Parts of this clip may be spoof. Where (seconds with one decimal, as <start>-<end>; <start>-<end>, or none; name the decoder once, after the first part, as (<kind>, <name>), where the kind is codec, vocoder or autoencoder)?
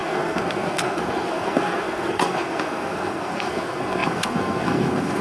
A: 0.0-5.2 (codec, SNAC)